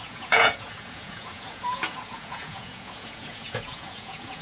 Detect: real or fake fake